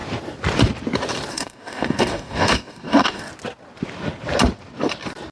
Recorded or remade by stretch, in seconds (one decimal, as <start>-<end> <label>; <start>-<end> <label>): 0.0-1.3 recorded; 1.3-3.3 remade; 3.3-5.3 recorded